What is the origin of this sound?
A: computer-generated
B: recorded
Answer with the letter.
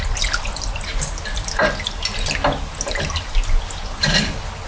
B